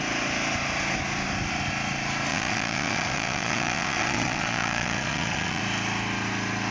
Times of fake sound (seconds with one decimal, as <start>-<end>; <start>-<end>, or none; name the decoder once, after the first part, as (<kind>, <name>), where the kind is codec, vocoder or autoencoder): 2.3-5.6 (vocoder, Vocos)